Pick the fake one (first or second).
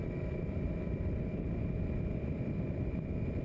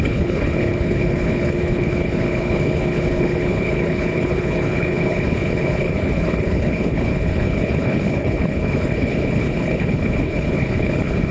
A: second